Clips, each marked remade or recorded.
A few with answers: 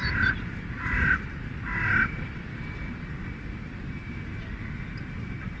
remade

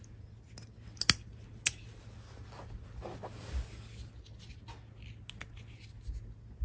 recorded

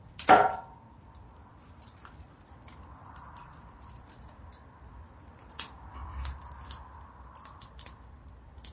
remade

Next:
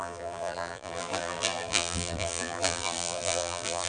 remade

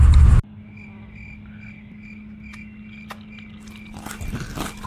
recorded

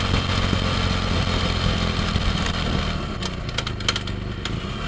recorded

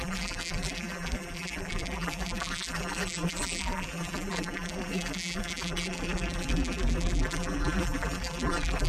remade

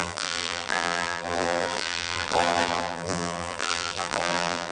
remade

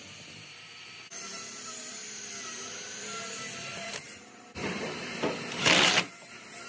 remade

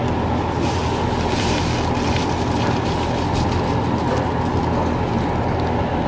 recorded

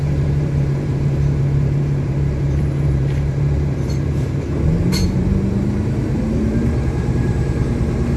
remade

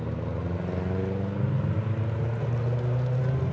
recorded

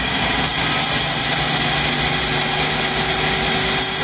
recorded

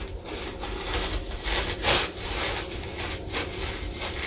recorded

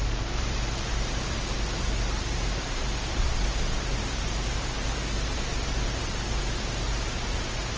remade